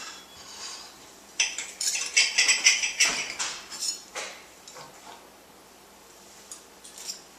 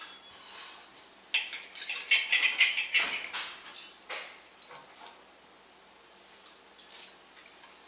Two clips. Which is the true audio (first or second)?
second